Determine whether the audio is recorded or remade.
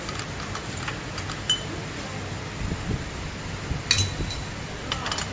recorded